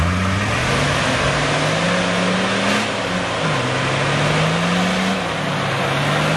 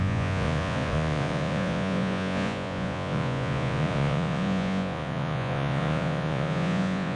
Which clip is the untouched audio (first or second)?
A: first